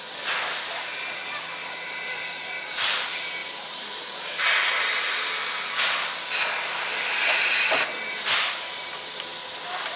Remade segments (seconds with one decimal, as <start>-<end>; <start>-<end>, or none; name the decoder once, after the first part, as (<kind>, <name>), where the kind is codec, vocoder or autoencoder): 3.4-4.7 (vocoder, BigVGAN v2)